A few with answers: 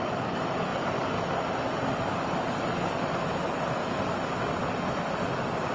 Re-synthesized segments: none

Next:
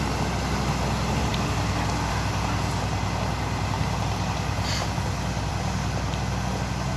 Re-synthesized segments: none

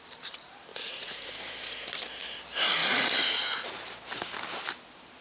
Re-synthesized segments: 0.7-1.3 (vocoder, Vocos)